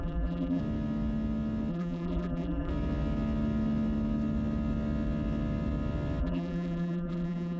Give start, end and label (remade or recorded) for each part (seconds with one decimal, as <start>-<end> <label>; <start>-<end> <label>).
0.0-0.6 remade; 0.6-1.7 recorded; 1.7-2.7 remade; 2.7-6.2 recorded; 6.2-7.6 remade